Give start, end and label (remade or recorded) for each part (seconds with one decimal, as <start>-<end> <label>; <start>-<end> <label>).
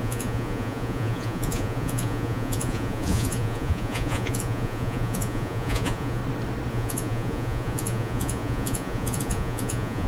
0.0-6.2 remade; 6.2-6.7 recorded; 6.7-10.1 remade